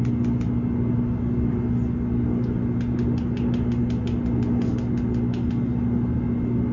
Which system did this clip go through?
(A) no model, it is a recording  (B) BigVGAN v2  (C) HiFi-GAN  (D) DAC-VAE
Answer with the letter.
A